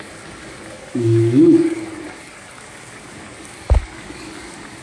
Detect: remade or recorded remade